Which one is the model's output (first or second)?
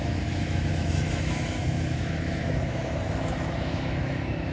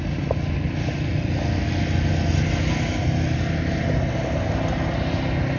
first